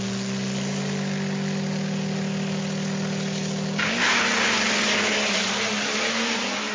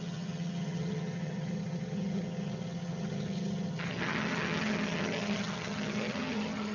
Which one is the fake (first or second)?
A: second